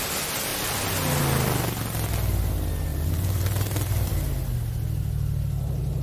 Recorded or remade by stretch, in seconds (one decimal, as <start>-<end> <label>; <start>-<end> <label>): 0.0-0.5 recorded; 0.5-1.2 remade; 1.2-2.9 recorded; 2.9-4.3 remade; 4.3-6.0 recorded